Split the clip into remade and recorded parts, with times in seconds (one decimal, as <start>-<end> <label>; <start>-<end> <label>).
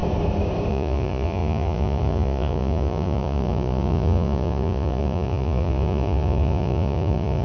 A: 0.0-0.7 recorded; 0.7-7.4 remade